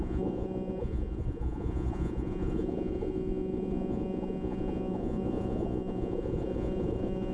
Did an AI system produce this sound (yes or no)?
yes